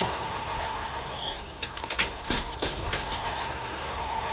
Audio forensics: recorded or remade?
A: remade